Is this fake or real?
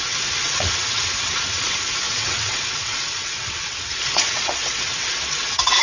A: fake